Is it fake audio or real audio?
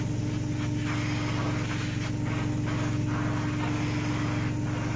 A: real